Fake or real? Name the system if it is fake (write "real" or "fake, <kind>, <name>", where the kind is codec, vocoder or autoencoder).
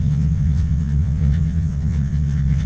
fake, vocoder, WaveNeXt